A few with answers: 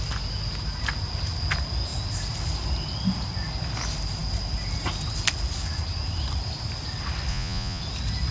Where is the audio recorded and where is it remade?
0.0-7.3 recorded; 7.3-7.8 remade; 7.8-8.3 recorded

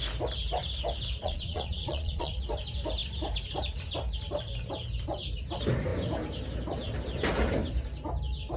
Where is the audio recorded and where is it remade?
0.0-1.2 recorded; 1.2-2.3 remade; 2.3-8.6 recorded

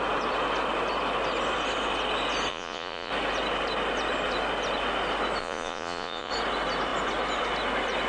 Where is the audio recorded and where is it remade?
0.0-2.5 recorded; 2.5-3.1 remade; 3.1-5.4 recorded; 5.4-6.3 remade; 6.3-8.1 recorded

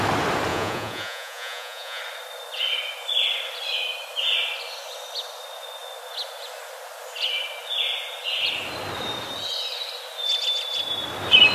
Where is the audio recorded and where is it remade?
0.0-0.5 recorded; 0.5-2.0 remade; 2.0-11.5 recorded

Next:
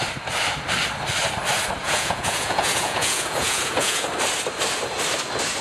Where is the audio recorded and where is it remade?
0.0-1.8 recorded; 1.8-4.1 remade; 4.1-5.6 recorded

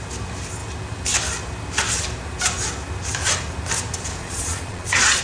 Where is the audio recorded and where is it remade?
0.0-4.2 recorded; 4.2-5.2 remade

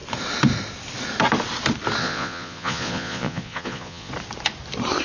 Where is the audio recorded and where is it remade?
0.0-2.0 recorded; 2.0-4.1 remade; 4.1-5.0 recorded

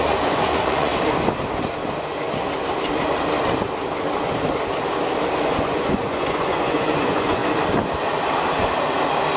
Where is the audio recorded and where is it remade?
0.0-0.9 remade; 0.9-5.6 recorded; 5.6-7.4 remade; 7.4-9.4 recorded